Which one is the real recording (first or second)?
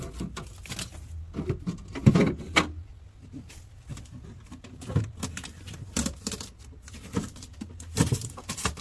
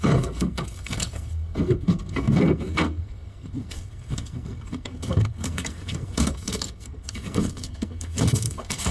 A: first